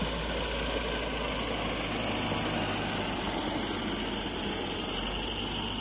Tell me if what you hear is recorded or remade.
recorded